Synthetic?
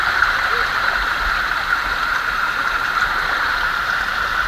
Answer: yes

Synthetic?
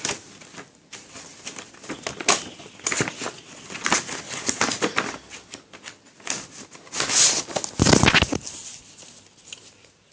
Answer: no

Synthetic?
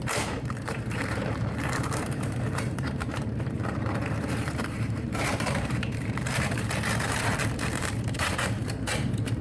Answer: yes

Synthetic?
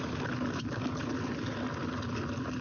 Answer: no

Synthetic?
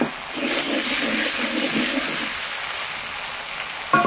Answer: no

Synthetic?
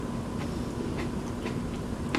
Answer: no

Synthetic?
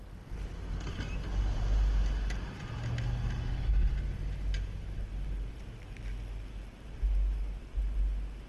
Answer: no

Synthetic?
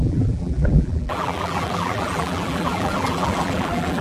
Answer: yes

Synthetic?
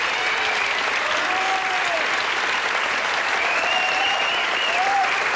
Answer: yes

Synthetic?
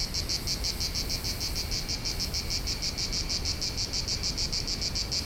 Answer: no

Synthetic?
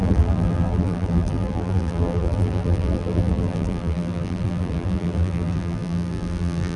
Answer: yes